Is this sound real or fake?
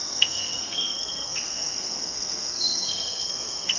fake